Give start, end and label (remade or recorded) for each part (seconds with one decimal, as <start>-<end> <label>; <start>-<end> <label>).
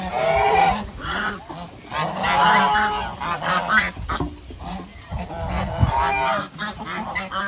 0.0-0.5 recorded; 0.5-1.4 remade; 1.4-7.5 recorded